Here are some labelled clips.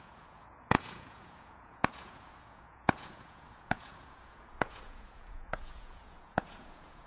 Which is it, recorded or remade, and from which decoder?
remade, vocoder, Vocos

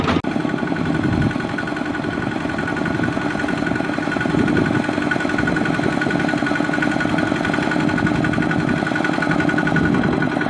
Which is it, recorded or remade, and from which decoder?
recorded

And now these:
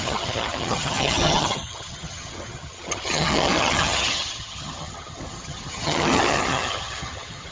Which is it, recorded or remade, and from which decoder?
remade, vocoder, HiFi-GAN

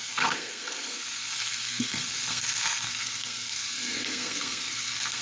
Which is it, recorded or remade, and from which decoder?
remade, codec, SNAC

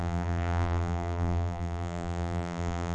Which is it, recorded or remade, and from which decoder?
remade, vocoder, BigVGAN v2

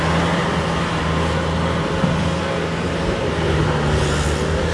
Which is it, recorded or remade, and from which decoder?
recorded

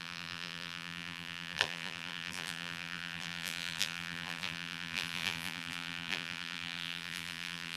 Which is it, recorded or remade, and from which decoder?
remade, vocoder, BigVGAN v2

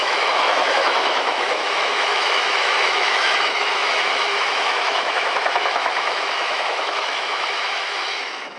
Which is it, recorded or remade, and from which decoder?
remade, autoencoder, DAC-VAE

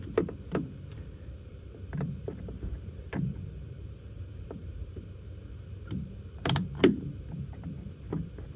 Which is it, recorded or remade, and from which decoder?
remade, vocoder, BigVGAN v2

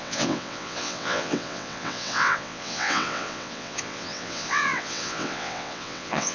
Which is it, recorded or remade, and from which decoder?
remade, vocoder, WaveNeXt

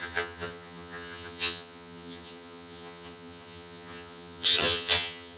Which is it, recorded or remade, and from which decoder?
remade, vocoder, HiFi-GAN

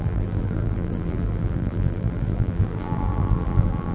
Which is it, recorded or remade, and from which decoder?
remade, vocoder, BigVGAN v2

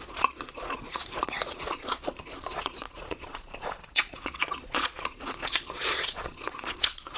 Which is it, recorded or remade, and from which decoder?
remade, vocoder, Vocos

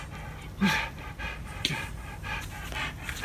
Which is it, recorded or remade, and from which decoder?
recorded